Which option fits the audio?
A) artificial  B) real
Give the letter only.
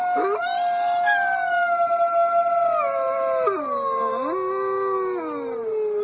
B